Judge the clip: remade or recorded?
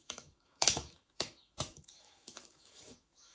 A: remade